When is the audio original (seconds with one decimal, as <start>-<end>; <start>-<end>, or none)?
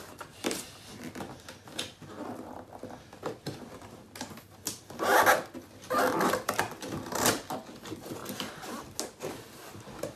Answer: 0.0-10.2